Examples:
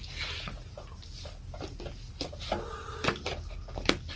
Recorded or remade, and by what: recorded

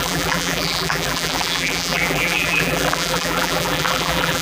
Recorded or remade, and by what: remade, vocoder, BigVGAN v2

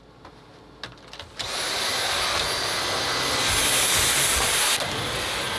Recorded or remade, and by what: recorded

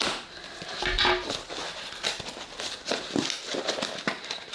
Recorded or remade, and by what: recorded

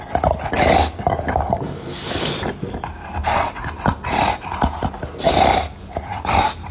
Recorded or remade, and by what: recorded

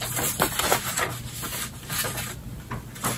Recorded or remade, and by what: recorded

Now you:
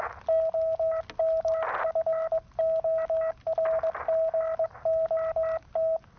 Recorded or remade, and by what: recorded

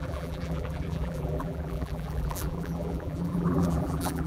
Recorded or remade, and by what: remade, vocoder, BigVGAN v2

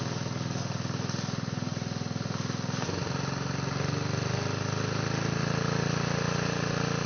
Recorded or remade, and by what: recorded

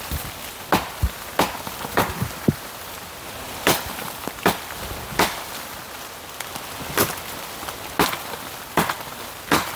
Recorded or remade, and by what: recorded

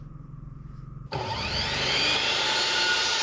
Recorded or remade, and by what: remade, vocoder, BigVGAN v2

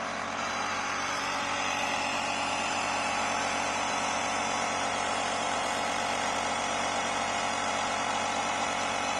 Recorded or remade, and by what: remade, vocoder, BigVGAN v2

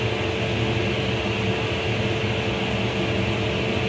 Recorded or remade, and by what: recorded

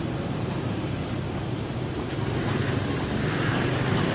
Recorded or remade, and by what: remade, vocoder, BigVGAN v2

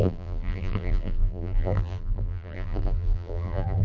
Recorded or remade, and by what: remade, vocoder, BigVGAN v2